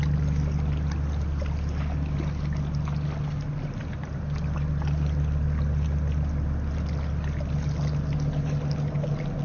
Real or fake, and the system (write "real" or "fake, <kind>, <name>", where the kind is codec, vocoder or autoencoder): real